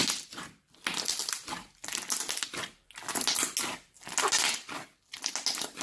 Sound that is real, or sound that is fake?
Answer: real